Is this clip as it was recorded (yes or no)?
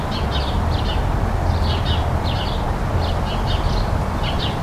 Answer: yes